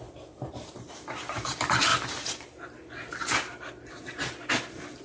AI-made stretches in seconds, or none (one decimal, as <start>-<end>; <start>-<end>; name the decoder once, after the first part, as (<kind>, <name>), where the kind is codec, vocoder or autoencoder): 0.0-1.9 (vocoder, BigVGAN v2)

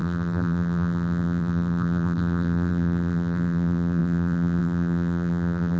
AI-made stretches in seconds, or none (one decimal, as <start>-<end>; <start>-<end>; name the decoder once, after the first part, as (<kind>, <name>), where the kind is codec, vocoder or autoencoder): 0.0-5.8 (vocoder, BigVGAN v2)